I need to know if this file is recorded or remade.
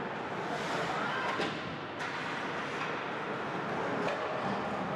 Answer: recorded